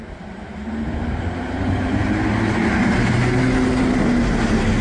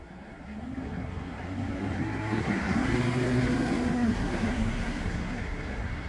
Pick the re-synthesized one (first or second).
second